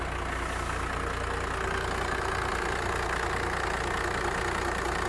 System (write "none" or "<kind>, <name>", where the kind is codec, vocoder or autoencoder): none